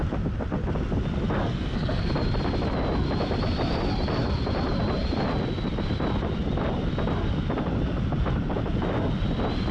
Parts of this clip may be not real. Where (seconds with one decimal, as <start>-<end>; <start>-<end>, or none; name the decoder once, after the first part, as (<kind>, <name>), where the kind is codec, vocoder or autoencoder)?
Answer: 1.4-2.1 (codec, SNAC)